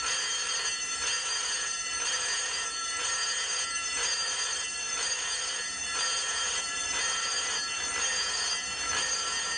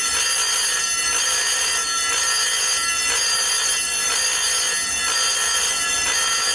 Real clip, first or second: second